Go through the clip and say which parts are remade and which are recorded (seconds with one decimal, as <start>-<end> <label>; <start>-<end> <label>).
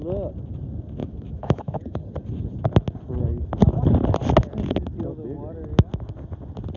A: 0.0-1.0 recorded; 1.0-2.0 remade; 2.0-6.8 recorded